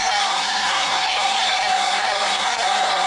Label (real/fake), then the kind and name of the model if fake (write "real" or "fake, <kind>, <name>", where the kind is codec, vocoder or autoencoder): fake, codec, SNAC